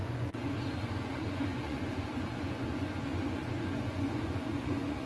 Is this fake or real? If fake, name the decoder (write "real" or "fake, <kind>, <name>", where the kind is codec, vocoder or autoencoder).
fake, vocoder, Vocos